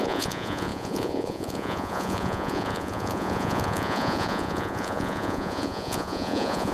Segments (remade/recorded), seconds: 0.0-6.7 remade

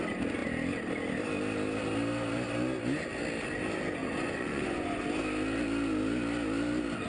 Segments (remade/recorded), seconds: 0.0-4.0 recorded; 4.0-5.0 remade; 5.0-7.1 recorded